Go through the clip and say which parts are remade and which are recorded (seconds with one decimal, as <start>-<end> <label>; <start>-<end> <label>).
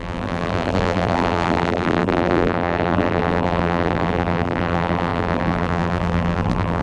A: 0.0-6.8 remade